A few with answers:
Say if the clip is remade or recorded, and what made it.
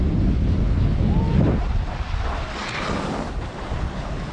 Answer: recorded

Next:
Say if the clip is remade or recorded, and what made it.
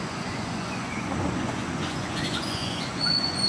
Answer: remade, vocoder, Vocos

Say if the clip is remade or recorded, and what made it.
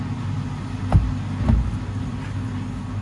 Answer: recorded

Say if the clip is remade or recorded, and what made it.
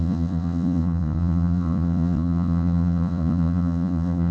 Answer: remade, vocoder, Vocos